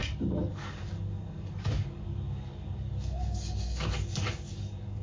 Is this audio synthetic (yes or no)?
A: yes